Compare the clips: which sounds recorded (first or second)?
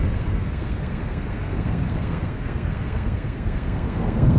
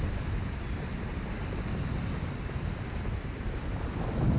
second